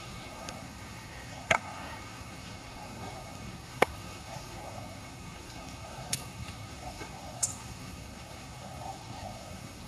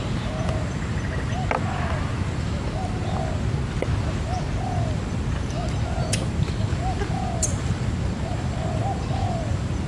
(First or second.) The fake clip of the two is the first